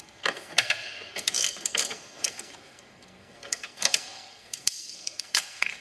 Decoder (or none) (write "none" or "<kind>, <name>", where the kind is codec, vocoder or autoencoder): codec, SNAC